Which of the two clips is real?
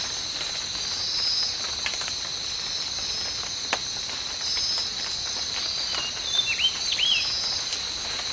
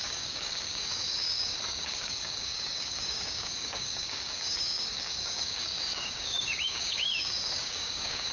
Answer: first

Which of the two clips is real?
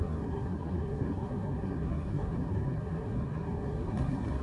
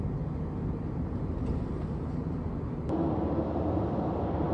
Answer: second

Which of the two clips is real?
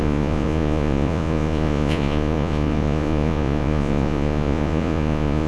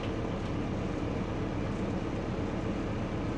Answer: second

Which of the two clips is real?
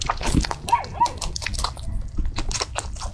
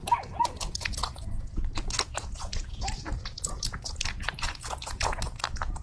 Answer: first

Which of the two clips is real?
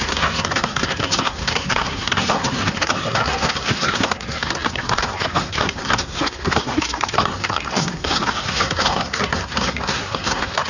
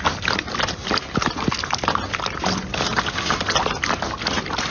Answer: second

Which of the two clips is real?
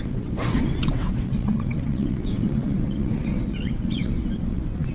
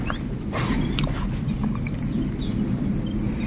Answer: second